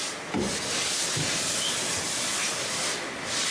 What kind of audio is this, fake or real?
real